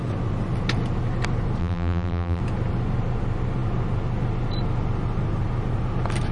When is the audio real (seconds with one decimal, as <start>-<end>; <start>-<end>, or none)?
0.0-1.6; 2.4-6.3